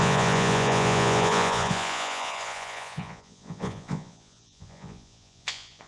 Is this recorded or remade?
remade